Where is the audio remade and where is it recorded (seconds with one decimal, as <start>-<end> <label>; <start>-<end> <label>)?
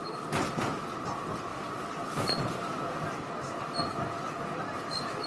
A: 0.0-5.3 recorded